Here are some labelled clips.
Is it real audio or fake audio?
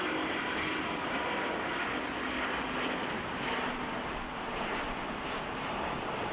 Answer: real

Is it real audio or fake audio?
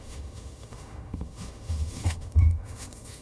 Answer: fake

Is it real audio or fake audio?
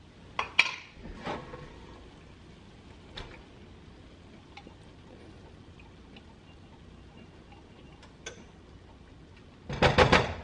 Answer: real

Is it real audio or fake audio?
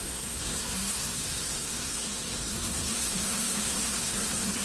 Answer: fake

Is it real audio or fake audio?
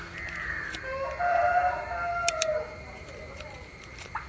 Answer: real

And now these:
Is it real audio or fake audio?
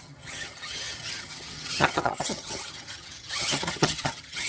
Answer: fake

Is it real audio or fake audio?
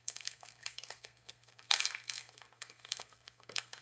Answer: fake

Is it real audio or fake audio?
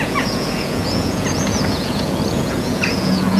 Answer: fake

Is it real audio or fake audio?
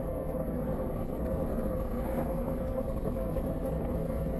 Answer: fake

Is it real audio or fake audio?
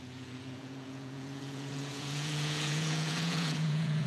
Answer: fake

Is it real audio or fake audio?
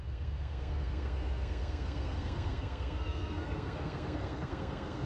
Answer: fake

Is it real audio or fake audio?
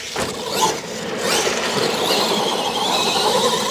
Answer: fake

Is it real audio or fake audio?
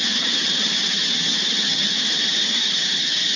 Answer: fake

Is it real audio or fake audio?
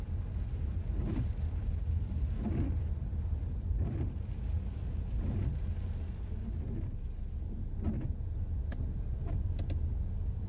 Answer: real